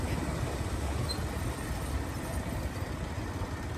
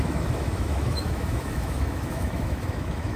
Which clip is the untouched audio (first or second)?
first